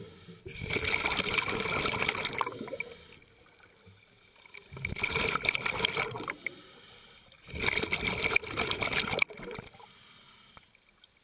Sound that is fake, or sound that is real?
real